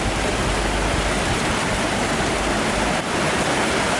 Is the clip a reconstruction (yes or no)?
no